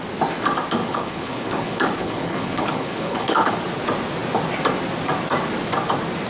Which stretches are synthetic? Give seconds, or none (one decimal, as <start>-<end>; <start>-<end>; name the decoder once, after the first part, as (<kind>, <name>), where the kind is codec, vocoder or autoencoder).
0.8-3.5 (codec, HILCodec)